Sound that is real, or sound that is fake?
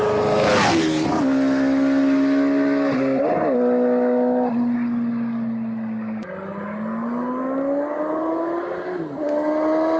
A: real